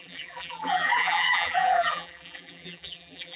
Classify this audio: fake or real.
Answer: fake